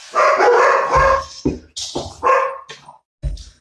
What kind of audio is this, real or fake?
real